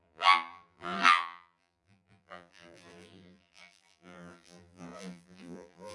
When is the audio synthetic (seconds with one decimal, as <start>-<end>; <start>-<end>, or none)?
0.0-5.9